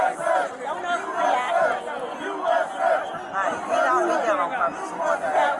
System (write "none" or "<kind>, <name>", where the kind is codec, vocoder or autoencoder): none